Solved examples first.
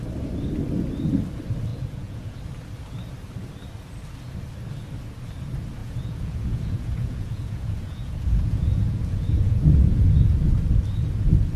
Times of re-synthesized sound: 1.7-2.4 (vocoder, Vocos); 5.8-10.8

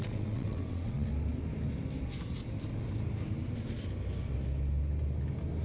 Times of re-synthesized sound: 0.0-1.1 (vocoder, WaveNeXt)

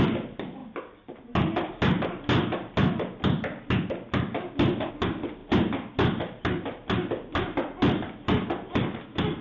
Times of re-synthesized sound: none

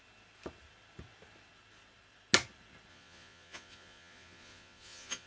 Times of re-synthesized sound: 2.9-5.3 (vocoder, Vocos)

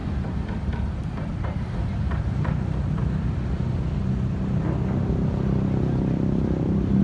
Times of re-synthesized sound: 0.0-3.0 (vocoder, BigVGAN v2)

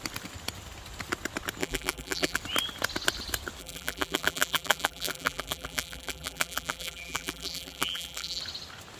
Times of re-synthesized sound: 1.6-2.4 (vocoder, BigVGAN v2); 3.6-8.4

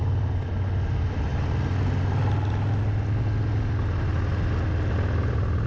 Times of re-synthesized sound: 0.0-1.3 (vocoder, BigVGAN v2); 4.7-5.7

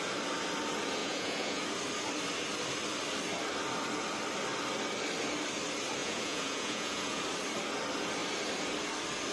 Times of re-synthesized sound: 1.0-1.7 (vocoder, Vocos); 6.0-7.2